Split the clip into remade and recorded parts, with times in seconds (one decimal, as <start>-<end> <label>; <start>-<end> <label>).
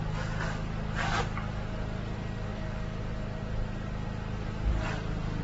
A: 0.0-2.5 recorded; 2.5-3.0 remade; 3.0-5.4 recorded